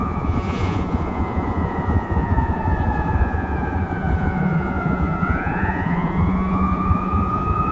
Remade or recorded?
remade